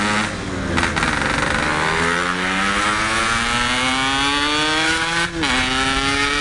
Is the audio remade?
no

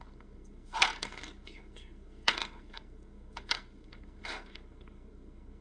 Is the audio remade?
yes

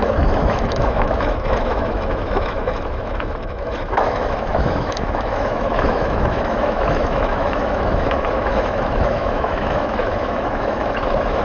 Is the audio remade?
yes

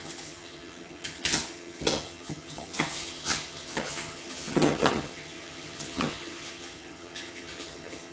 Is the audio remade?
yes